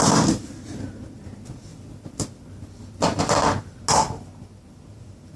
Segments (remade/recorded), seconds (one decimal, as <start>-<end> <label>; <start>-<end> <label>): 0.0-1.7 recorded; 1.7-3.2 remade; 3.2-5.4 recorded